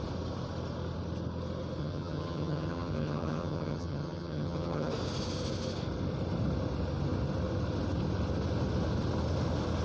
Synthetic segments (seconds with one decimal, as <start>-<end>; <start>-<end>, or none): 1.8-4.9